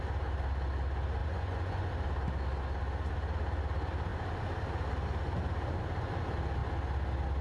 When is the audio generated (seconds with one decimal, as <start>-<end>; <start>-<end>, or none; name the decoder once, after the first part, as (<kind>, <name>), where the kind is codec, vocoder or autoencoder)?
1.2-1.9 (vocoder, Vocos)